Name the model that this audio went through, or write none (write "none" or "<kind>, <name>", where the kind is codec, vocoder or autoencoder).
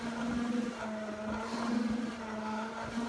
none